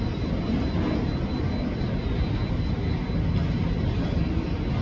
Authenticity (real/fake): real